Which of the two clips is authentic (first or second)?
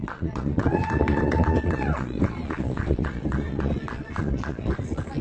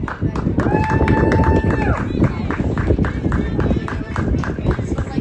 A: second